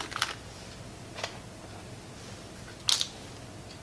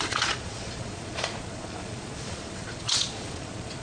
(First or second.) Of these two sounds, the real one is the first